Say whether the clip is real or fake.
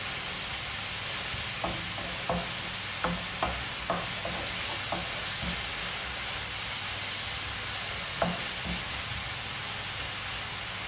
real